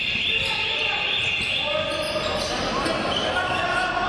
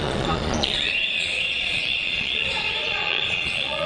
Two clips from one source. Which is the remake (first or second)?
second